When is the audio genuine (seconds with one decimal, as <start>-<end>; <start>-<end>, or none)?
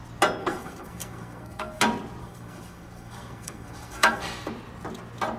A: 0.0-0.4; 1.8-2.2; 4.5-5.4